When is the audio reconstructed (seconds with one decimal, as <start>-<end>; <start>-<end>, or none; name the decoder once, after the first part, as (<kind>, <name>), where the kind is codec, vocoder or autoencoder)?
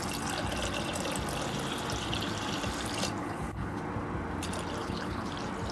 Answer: 3.2-3.8 (codec, HILCodec); 4.8-5.3